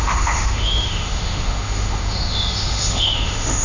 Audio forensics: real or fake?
fake